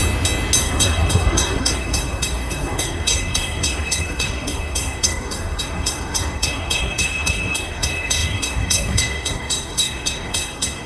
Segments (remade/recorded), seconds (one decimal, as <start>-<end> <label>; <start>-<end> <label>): 0.0-0.6 recorded; 0.6-10.9 remade